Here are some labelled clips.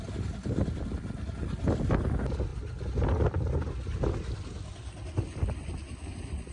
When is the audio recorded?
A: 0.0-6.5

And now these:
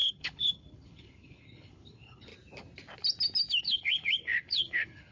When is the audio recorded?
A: 2.3-3.6

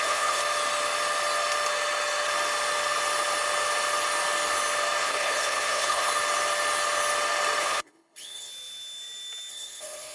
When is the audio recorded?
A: 0.4-5.0; 6.1-7.6; 8.5-9.5